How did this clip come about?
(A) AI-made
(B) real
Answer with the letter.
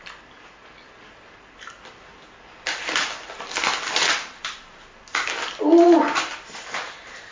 B